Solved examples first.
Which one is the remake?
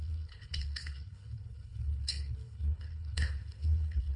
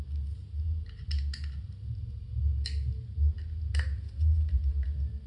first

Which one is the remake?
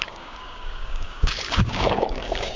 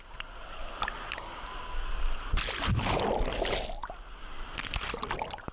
first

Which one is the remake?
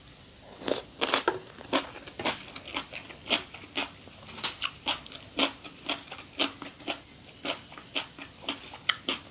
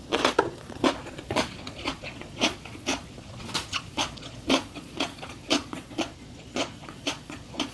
second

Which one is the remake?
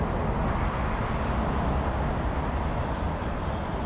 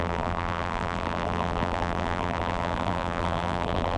second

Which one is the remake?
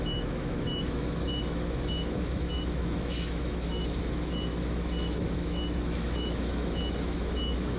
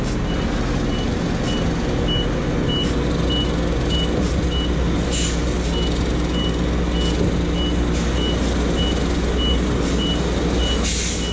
first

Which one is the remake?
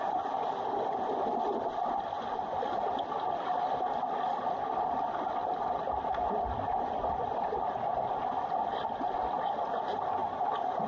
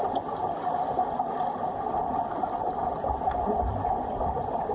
first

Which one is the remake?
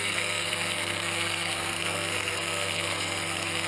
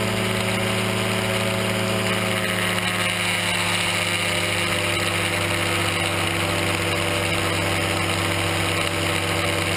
first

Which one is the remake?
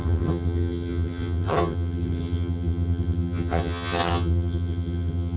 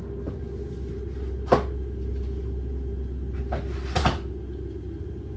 first